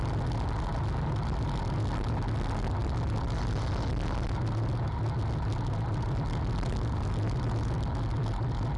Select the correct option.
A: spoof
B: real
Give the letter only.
B